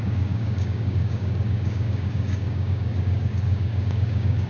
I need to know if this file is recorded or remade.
remade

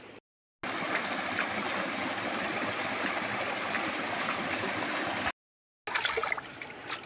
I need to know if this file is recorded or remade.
recorded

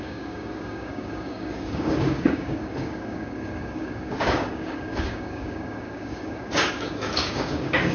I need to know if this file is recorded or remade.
remade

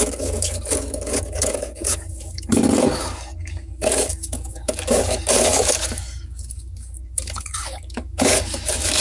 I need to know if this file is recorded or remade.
remade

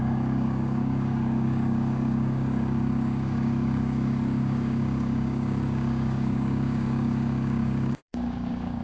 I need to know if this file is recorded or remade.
remade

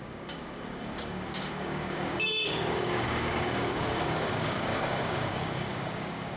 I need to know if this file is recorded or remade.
remade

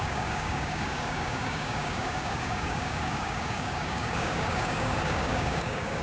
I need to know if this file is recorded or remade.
remade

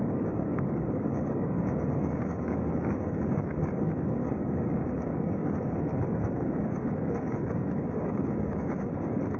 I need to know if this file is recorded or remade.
remade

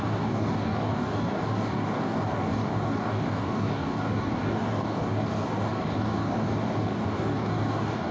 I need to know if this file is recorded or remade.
remade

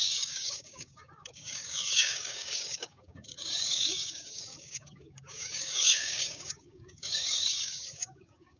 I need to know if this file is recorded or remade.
remade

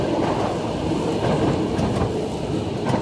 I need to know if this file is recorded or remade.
recorded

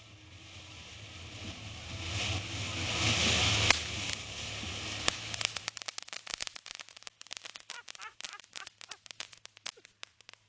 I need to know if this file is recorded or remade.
recorded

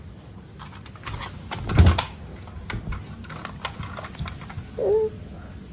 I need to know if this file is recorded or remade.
recorded